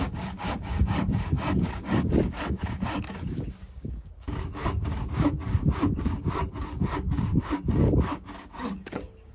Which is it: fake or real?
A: fake